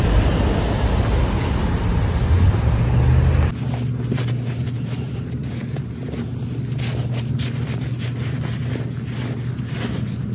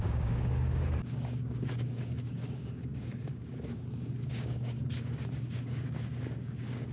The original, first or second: first